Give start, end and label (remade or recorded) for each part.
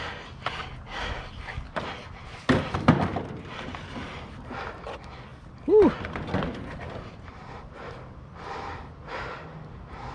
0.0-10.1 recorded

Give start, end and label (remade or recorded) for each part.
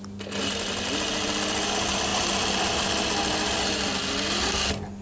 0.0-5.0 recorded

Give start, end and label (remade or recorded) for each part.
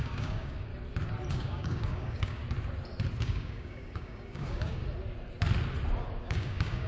0.0-0.7 remade; 0.7-1.3 recorded; 1.3-2.4 remade; 2.4-3.2 recorded; 3.2-4.8 remade; 4.8-6.2 recorded; 6.2-6.9 remade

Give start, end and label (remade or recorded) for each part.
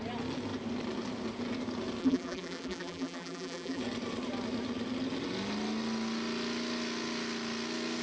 0.0-2.0 recorded; 2.0-3.8 remade; 3.8-8.0 recorded